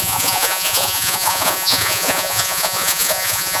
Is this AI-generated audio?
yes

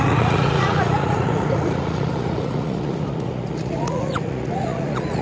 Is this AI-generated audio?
yes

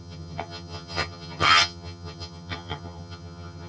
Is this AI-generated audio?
yes